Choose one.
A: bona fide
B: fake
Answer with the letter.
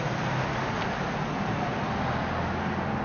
A